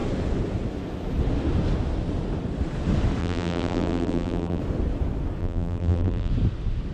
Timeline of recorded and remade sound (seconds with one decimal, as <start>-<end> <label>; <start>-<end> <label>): 0.0-3.2 recorded; 3.2-4.6 remade; 4.6-5.4 recorded; 5.4-6.3 remade; 6.3-6.9 recorded